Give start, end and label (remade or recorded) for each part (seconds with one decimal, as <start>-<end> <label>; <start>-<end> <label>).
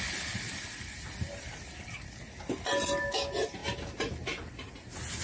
0.0-5.2 recorded